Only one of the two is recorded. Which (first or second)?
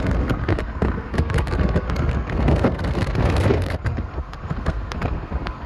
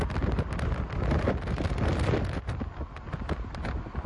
second